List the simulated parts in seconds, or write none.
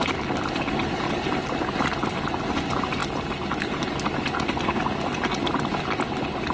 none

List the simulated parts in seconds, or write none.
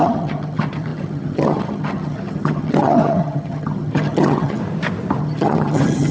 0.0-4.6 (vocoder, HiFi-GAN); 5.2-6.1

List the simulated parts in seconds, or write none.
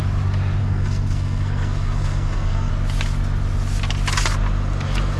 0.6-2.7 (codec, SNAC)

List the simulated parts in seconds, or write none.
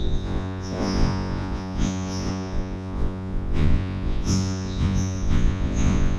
0.0-6.2 (vocoder, Vocos)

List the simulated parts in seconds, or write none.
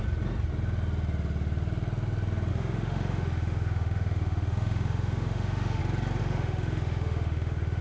2.5-5.8 (autoencoder, DAC-VAE); 6.2-7.8